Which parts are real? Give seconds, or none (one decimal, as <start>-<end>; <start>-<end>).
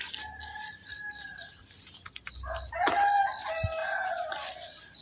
0.0-3.8; 4.3-5.0